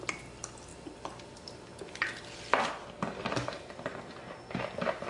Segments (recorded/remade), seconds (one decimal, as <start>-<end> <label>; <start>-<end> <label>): 0.0-5.1 recorded